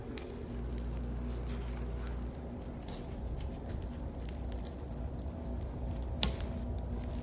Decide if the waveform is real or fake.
real